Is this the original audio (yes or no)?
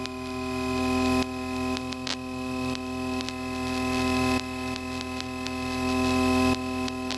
yes